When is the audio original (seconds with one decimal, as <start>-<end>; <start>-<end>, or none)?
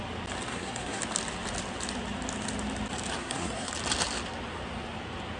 0.0-0.5; 1.0-3.2; 3.7-5.4